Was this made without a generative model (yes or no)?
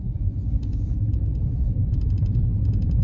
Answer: no